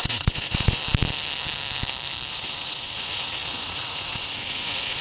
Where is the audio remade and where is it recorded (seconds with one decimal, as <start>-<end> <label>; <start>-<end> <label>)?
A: 0.0-0.8 remade; 0.8-2.3 recorded; 2.3-5.0 remade